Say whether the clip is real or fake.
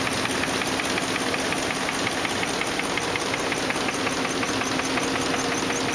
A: real